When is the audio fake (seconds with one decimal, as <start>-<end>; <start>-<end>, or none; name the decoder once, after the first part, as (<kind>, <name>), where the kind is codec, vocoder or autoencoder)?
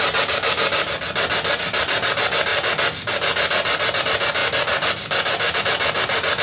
none